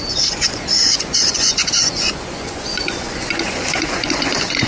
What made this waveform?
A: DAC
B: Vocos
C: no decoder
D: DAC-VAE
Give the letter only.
B